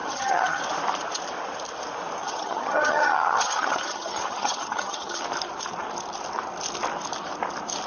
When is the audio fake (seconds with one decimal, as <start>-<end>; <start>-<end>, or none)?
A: 0.0-0.6; 2.2-5.2